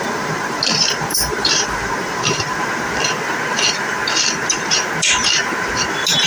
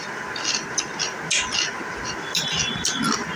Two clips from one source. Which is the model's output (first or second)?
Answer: first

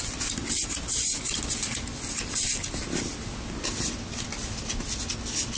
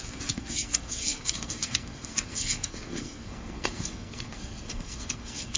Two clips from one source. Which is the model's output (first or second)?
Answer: second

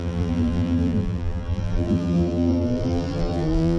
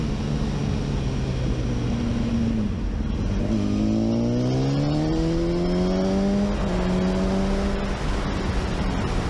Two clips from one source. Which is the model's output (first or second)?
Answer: first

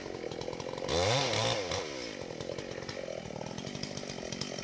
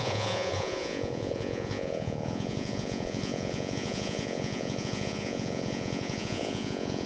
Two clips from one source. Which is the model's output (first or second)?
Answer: second